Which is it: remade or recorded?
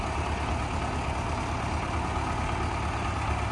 recorded